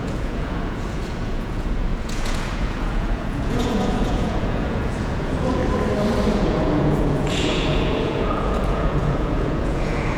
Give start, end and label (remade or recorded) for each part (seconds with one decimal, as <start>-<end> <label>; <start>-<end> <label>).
0.0-5.6 remade; 5.6-6.3 recorded; 6.3-10.2 remade